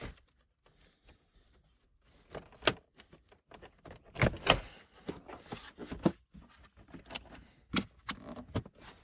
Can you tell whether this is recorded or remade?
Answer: recorded